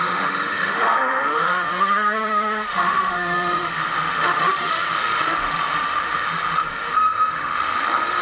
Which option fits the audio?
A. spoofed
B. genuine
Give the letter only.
A